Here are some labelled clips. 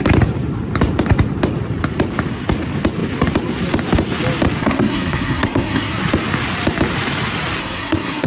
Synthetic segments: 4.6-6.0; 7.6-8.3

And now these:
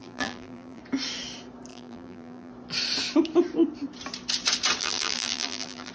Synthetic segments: 0.0-0.8; 1.7-2.5; 4.8-5.9

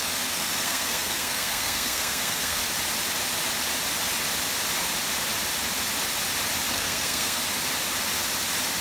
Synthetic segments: 0.0-2.6; 6.7-7.4

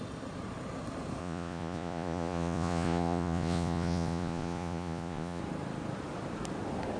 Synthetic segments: 1.2-5.4

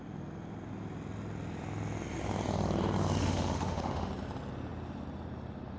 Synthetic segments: 3.2-4.1

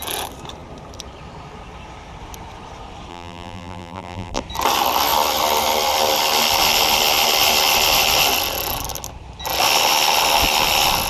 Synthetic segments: 3.1-4.4

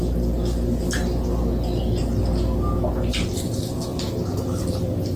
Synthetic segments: none